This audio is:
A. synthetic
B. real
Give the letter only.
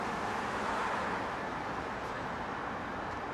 B